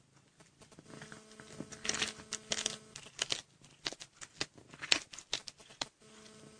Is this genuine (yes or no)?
yes